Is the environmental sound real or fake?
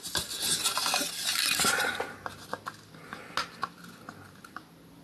real